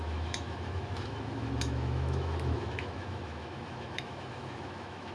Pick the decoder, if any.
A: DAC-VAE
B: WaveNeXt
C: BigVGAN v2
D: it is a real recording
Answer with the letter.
A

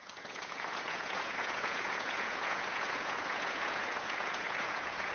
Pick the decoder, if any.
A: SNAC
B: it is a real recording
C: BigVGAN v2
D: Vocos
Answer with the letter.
D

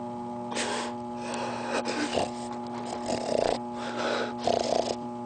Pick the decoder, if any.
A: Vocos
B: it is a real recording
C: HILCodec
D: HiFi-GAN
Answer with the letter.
B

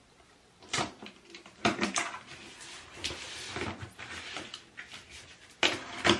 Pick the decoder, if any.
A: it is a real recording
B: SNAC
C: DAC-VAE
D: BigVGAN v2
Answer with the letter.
A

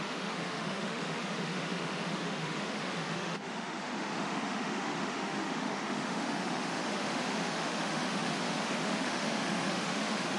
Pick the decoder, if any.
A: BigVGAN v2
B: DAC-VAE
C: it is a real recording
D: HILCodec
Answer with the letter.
B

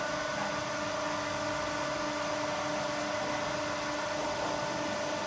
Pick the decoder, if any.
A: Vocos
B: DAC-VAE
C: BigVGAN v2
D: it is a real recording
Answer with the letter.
D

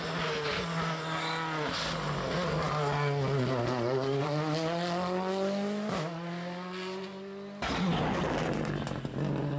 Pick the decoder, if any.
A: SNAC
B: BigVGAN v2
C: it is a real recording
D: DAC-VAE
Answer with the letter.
C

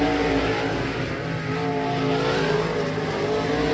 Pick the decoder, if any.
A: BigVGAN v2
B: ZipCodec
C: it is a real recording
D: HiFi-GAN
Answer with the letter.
C